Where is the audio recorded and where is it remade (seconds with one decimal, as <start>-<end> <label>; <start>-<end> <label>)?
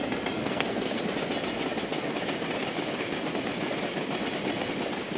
0.0-0.4 recorded; 0.4-1.0 remade; 1.0-5.2 recorded